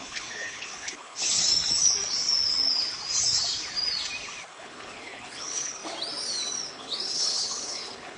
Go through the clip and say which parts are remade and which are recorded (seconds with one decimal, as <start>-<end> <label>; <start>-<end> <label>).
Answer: 0.0-1.5 remade; 1.5-4.5 recorded; 4.5-5.8 remade; 5.8-6.7 recorded; 6.7-8.2 remade